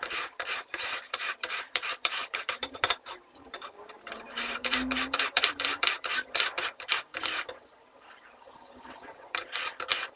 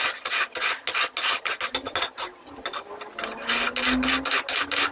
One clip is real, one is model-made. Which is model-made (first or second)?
first